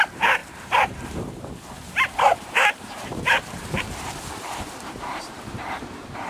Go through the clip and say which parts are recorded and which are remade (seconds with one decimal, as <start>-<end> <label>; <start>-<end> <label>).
0.0-6.3 remade